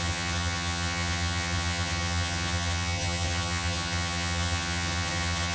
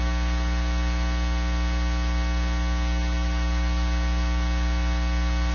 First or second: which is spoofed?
first